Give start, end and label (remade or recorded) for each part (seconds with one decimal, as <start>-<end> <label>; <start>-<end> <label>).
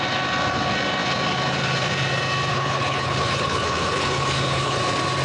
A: 0.0-2.5 recorded; 2.5-4.8 remade; 4.8-5.2 recorded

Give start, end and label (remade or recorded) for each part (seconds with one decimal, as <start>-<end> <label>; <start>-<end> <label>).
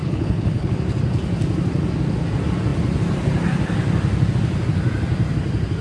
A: 0.0-0.7 remade; 0.7-5.8 recorded